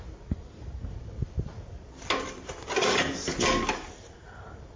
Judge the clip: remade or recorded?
recorded